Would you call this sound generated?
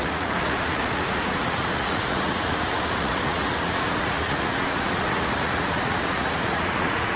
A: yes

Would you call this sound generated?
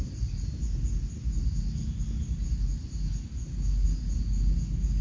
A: no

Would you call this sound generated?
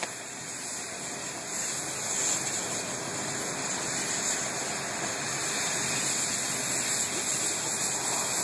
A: no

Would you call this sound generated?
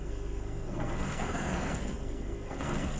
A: yes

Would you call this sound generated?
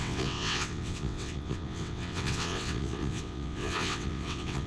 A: yes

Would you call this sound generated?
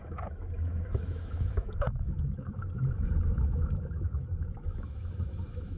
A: yes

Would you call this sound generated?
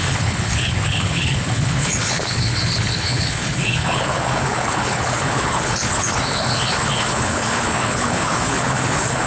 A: yes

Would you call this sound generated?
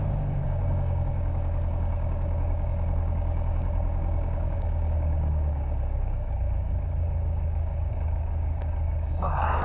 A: yes